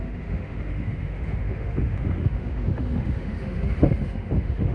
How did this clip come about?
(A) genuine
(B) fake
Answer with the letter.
B